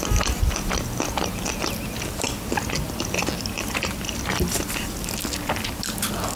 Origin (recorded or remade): recorded